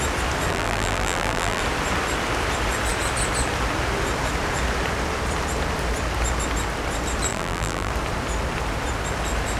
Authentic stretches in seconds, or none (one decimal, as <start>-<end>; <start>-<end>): 0.0-0.5; 1.6-7.3; 7.9-9.6